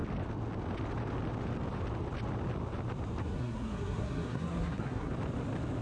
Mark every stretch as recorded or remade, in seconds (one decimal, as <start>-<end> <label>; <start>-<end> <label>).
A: 0.0-3.2 recorded; 3.2-5.1 remade; 5.1-5.8 recorded